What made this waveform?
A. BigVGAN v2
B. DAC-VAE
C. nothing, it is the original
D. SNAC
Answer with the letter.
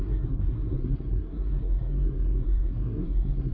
D